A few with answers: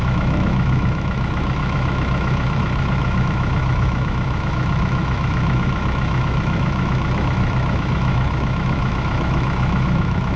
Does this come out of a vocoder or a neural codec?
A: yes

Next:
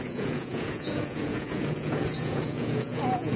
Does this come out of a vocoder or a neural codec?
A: yes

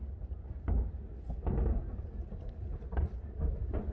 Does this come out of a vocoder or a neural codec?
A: no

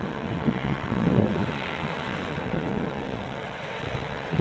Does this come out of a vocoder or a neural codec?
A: yes